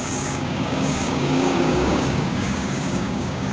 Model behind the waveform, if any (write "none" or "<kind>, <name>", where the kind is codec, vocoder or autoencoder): codec, DAC